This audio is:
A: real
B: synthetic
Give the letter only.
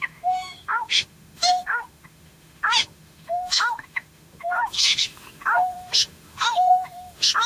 B